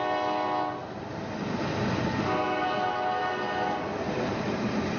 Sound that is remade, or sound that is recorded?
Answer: recorded